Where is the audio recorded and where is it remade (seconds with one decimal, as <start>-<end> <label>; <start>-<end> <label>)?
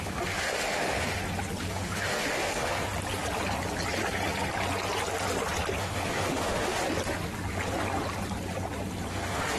0.0-1.2 remade; 1.2-1.7 recorded; 1.7-2.9 remade; 2.9-5.8 recorded; 5.8-6.8 remade; 6.8-9.1 recorded; 9.1-9.6 remade